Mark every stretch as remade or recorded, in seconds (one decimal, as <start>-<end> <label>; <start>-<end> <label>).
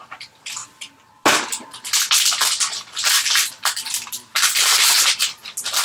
0.0-5.8 recorded